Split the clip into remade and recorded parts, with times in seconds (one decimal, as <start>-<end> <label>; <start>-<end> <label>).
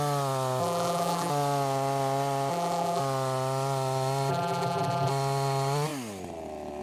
0.0-0.6 recorded; 0.6-1.3 remade; 1.3-2.5 recorded; 2.5-3.0 remade; 3.0-4.3 recorded; 4.3-5.1 remade; 5.1-6.8 recorded